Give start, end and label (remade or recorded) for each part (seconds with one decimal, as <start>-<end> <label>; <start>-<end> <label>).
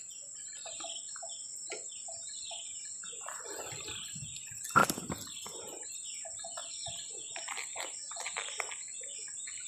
0.0-9.7 recorded